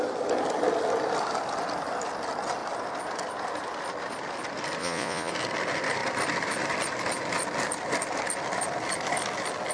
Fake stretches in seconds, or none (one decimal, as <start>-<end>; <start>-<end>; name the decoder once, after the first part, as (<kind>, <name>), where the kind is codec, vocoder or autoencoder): 4.8-5.3 (vocoder, Vocos)